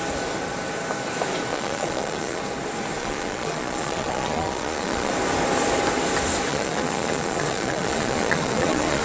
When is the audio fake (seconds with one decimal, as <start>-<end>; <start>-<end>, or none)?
1.5-2.4; 3.0-5.1; 6.5-9.0